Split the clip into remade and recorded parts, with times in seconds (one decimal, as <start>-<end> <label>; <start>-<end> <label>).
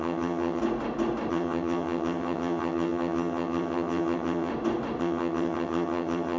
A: 0.0-0.6 remade; 0.6-1.3 recorded; 1.3-4.5 remade; 4.5-5.0 recorded; 5.0-6.4 remade